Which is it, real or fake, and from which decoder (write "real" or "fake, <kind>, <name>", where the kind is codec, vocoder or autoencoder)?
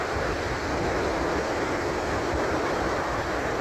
fake, vocoder, BigVGAN v2